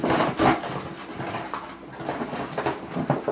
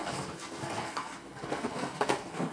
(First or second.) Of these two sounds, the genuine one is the first